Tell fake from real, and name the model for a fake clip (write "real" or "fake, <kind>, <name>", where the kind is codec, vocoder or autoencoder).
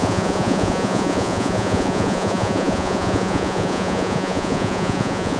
fake, vocoder, Vocos